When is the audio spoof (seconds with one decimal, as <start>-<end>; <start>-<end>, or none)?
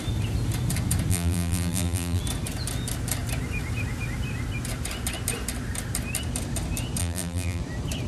1.1-2.2; 7.0-7.6